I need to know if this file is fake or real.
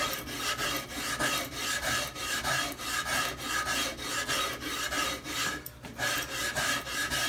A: real